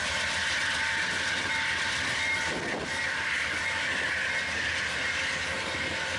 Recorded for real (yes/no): yes